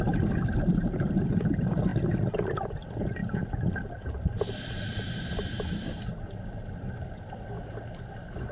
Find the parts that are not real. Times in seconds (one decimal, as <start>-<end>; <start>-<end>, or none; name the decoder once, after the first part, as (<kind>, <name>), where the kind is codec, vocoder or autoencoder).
none